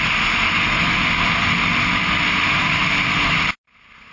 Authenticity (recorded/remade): recorded